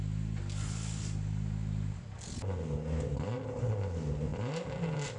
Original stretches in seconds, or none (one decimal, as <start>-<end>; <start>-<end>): 0.0-5.2